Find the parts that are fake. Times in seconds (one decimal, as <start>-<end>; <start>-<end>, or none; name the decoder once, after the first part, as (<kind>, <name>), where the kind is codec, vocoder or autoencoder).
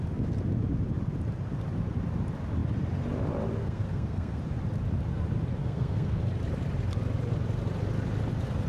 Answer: 3.6-4.4 (codec, SNAC); 5.6-6.2